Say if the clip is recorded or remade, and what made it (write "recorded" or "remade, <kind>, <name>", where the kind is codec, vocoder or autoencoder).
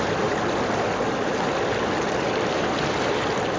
recorded